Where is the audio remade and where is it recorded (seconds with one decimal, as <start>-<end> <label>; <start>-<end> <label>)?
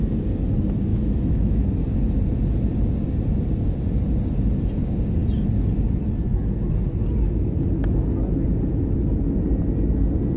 0.0-0.9 recorded; 0.9-1.6 remade; 1.6-10.4 recorded